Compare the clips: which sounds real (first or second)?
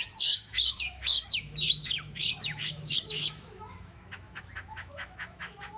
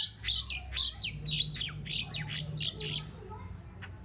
second